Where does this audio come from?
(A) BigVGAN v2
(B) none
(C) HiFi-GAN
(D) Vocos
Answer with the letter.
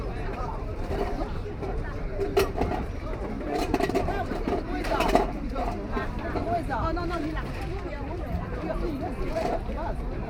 A